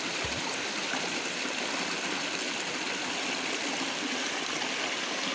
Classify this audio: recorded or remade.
recorded